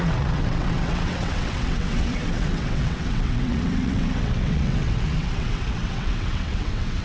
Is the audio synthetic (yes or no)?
yes